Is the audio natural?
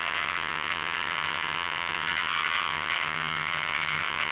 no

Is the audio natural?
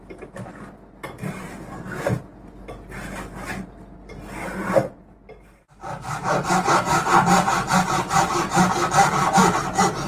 yes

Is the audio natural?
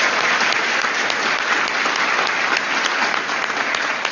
yes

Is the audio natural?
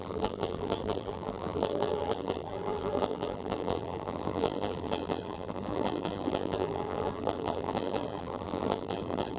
no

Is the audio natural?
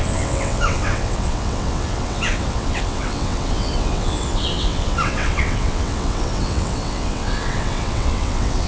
no